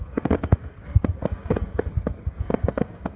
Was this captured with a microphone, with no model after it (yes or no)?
no